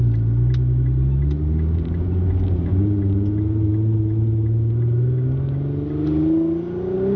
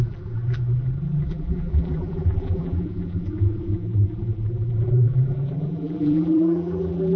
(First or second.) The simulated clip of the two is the second